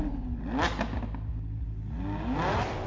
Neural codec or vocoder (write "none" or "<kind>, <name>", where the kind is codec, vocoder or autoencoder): none